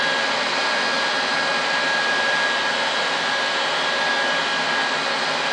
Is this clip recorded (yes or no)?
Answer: yes